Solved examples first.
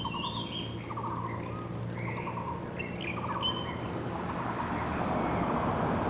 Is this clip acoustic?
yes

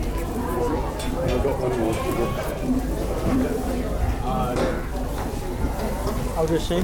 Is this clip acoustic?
no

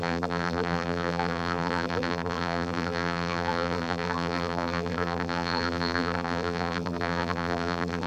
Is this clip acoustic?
no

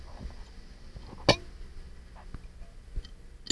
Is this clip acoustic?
yes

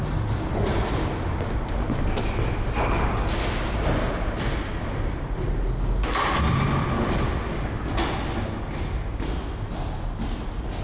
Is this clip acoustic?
yes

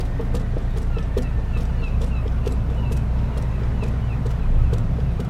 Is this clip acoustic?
yes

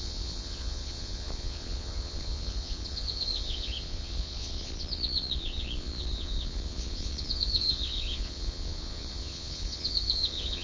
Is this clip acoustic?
no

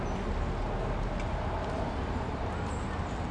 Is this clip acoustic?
yes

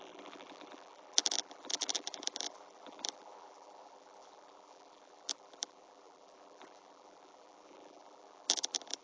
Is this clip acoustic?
no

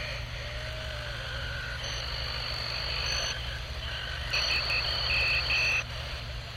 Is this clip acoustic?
yes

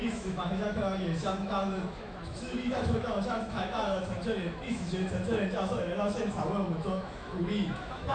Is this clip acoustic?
no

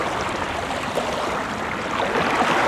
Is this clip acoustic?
yes